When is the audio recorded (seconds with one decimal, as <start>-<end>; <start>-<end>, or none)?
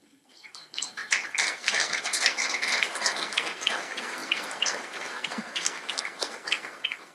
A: none